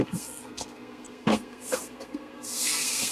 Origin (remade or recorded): remade